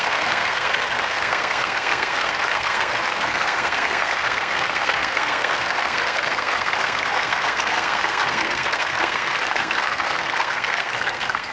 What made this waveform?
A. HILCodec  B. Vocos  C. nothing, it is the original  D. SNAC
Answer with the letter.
D